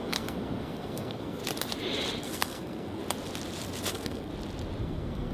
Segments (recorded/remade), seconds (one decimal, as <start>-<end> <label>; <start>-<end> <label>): 0.0-1.4 remade; 1.4-2.2 recorded; 2.2-3.0 remade; 3.0-3.9 recorded; 3.9-4.3 remade; 4.3-4.8 recorded; 4.8-5.3 remade